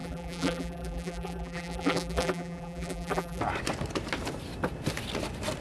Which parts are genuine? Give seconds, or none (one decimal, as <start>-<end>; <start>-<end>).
3.4-5.6